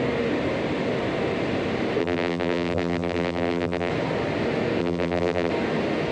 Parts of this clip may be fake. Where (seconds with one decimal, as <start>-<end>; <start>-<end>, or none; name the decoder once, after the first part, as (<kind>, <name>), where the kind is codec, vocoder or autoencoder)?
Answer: 2.0-3.9 (vocoder, BigVGAN v2); 4.8-5.5